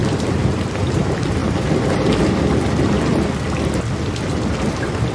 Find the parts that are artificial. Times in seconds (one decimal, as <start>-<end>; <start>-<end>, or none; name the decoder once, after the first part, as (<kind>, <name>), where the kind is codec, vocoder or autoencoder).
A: 0.0-1.4 (vocoder, BigVGAN v2); 3.9-5.1